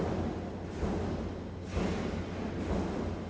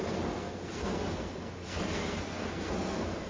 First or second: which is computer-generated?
second